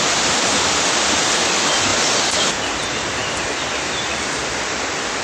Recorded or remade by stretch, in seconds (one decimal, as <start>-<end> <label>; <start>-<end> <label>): 0.0-5.2 recorded